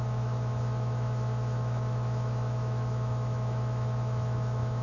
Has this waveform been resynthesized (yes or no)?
yes